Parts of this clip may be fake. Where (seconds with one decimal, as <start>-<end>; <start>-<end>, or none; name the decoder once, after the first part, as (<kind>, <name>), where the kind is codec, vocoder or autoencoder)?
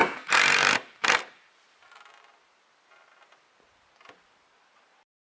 0.0-2.1 (vocoder, BigVGAN v2)